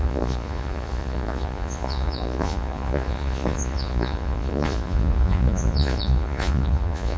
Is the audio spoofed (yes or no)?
yes